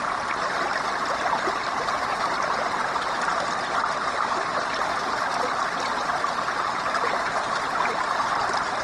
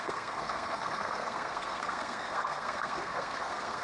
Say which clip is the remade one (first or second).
second